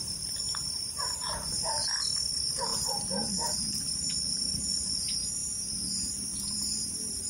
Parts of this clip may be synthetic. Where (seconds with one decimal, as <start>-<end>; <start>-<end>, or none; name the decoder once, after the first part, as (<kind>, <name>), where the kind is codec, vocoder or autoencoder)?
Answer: 0.0-1.8 (vocoder, BigVGAN v2); 2.3-7.3

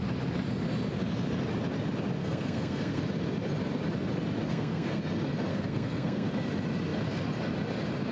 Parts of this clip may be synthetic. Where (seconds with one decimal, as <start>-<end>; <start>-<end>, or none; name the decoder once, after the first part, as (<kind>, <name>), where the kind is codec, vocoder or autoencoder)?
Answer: 2.2-3.0 (codec, SNAC); 4.5-5.0; 5.5-6.3